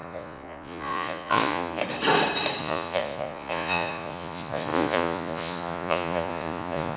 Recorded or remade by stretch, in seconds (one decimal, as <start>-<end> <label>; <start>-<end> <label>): 0.0-1.8 remade; 1.8-2.6 recorded; 2.6-7.0 remade